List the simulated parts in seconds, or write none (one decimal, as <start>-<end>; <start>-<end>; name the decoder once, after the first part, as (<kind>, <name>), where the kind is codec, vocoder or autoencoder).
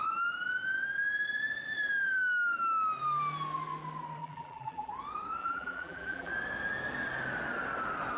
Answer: 4.2-4.9 (vocoder, BigVGAN v2); 5.4-6.3